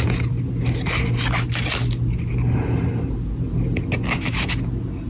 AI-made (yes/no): no